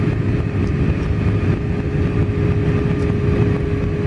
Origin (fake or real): real